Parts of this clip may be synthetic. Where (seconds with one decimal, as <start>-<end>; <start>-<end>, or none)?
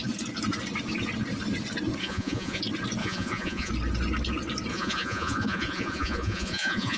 2.0-2.6; 3.0-3.7; 4.7-7.0